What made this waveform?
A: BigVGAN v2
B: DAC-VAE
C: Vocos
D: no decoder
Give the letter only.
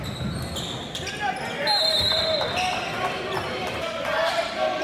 D